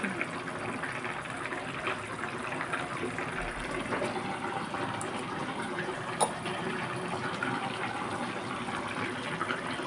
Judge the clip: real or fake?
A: fake